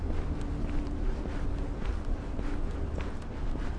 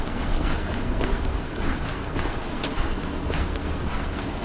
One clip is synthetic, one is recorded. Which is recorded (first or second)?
first